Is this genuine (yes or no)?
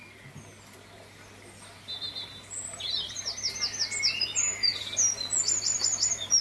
yes